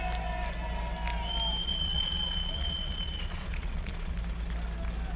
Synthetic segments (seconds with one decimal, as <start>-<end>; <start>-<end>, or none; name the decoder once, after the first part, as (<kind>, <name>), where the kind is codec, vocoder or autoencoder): 1.6-4.1 (vocoder, Vocos)